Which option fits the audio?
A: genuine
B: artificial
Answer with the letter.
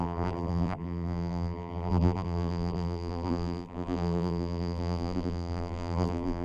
B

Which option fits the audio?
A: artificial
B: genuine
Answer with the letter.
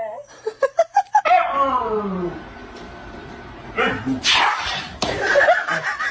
A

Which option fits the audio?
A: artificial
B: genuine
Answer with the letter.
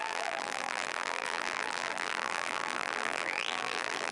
A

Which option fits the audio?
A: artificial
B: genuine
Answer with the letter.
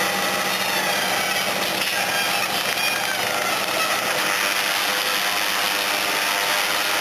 B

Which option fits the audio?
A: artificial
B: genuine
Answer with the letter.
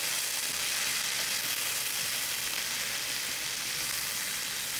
B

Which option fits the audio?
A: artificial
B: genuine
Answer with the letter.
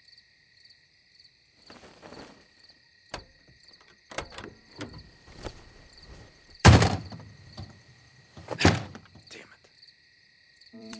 A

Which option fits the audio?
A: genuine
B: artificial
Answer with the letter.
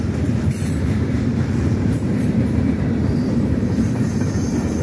B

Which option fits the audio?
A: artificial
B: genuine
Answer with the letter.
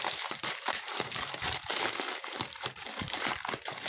A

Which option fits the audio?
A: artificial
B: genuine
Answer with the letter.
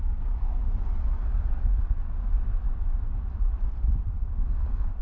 B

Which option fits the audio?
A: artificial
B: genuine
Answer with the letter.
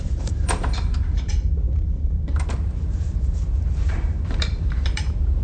A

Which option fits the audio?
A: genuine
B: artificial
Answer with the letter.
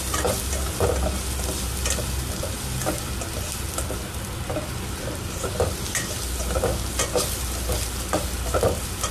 A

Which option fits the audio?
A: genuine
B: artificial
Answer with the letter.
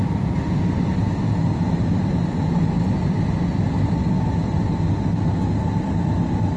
A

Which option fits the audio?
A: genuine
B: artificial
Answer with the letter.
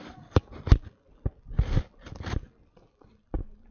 B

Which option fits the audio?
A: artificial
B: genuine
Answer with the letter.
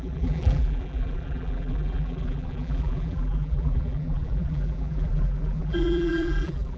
A